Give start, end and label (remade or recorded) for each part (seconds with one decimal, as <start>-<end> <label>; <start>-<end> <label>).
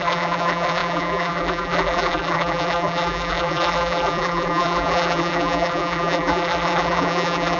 0.0-7.6 remade